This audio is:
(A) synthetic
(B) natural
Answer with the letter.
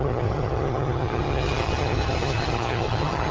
A